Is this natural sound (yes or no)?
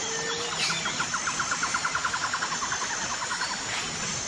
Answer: yes